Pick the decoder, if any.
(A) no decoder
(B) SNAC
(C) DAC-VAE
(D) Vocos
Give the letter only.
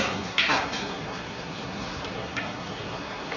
B